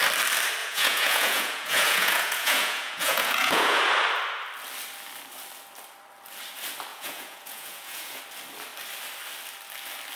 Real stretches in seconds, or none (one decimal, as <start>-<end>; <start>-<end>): 0.0-0.6; 3.8-6.9; 8.2-10.2